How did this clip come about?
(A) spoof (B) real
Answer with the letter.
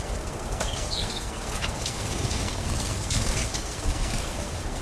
A